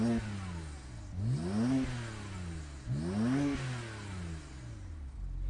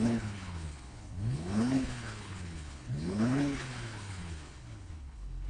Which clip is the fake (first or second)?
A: second